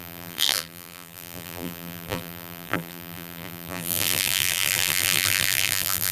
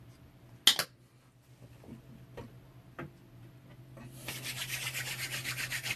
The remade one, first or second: first